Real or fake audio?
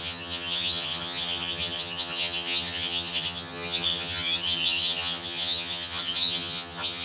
fake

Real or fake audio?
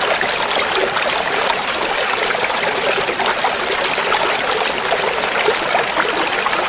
real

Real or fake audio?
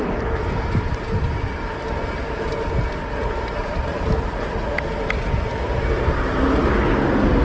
real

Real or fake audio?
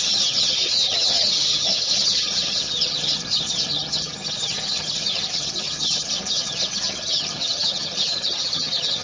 fake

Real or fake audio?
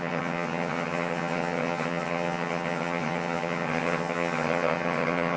fake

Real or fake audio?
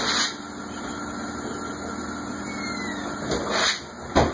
real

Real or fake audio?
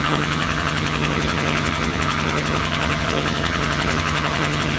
fake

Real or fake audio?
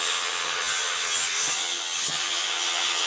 fake